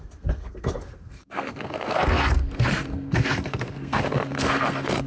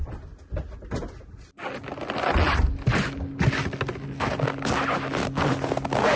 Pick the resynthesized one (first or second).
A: first